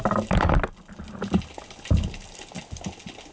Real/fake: real